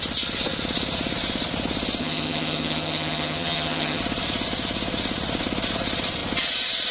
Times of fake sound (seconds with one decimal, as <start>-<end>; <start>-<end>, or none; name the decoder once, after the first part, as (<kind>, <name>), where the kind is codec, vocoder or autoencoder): 2.0-4.0 (vocoder, HiFi-GAN)